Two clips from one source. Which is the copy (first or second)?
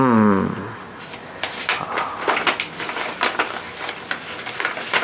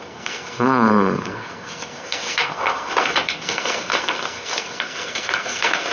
second